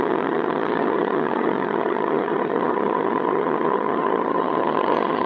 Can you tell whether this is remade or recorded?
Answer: remade